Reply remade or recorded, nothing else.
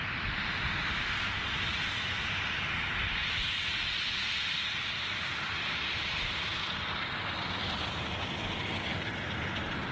recorded